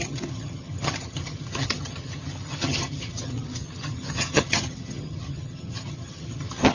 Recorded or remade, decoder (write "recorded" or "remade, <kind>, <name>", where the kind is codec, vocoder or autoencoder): remade, vocoder, HiFi-GAN